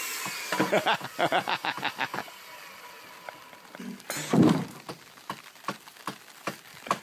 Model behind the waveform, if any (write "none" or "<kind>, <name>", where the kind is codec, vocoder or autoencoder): none